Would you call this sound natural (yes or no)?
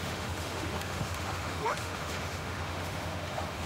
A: no